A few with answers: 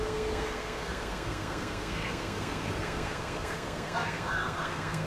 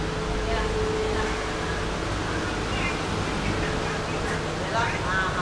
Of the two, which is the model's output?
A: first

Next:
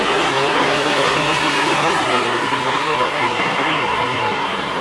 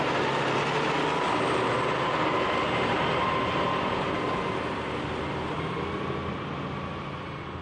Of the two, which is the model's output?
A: first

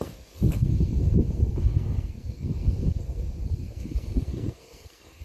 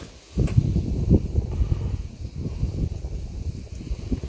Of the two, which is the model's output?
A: first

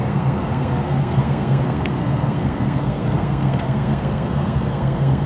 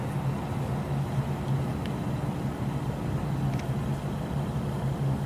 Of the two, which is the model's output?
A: first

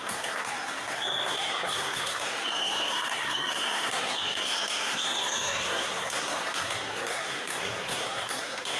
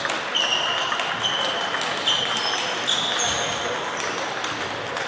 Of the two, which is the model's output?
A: first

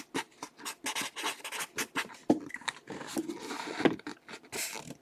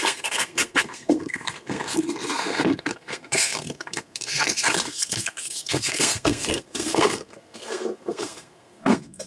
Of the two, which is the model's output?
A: second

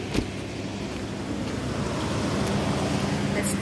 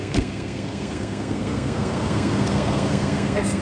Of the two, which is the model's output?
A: second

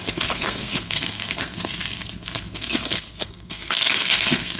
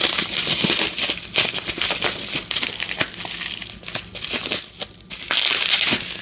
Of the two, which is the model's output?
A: first